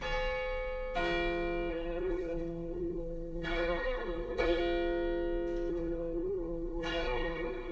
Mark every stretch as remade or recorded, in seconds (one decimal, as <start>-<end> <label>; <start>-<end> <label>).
0.0-1.7 recorded; 1.7-4.6 remade; 4.6-5.7 recorded; 5.7-7.7 remade